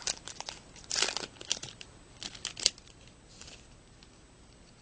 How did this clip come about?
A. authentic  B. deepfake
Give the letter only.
A